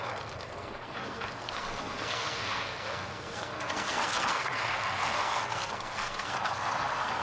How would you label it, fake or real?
fake